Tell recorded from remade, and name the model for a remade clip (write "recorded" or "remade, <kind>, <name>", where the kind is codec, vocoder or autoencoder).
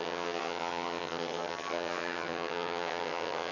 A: remade, vocoder, HiFi-GAN